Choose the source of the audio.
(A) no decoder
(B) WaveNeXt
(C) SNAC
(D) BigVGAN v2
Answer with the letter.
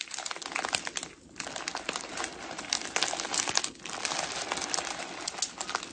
A